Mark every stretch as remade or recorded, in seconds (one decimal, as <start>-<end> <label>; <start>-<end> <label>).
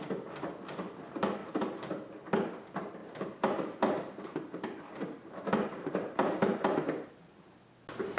0.0-1.4 recorded; 1.4-2.1 remade; 2.1-3.0 recorded; 3.0-7.1 remade; 7.1-8.2 recorded